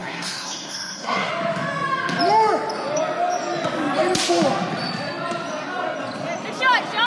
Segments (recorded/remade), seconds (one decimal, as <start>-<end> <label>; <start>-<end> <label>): 0.0-1.3 remade; 1.3-7.1 recorded

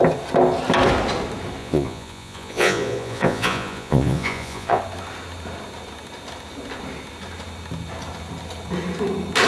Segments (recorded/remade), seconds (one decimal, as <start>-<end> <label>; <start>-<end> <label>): 0.0-1.6 recorded; 1.6-4.8 remade; 4.8-9.5 recorded

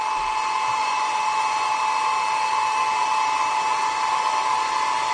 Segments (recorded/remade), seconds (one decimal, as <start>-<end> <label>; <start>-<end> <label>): 0.0-0.8 recorded; 0.8-1.7 remade; 1.7-5.1 recorded

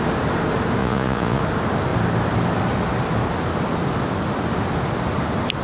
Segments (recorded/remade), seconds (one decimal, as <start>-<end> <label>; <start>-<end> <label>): 0.0-0.8 recorded; 0.8-1.4 remade; 1.4-5.6 recorded

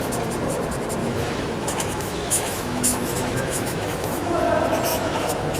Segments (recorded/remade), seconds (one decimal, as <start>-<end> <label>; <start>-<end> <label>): 0.0-1.0 recorded; 1.0-4.4 remade; 4.4-4.9 recorded; 4.9-5.6 remade

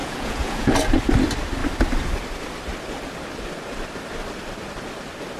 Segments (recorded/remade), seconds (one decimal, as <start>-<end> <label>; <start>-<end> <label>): 0.0-0.7 remade; 0.7-5.4 recorded

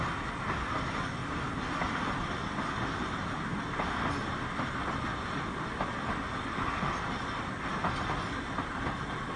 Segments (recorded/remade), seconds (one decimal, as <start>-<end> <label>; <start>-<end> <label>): 0.0-9.4 recorded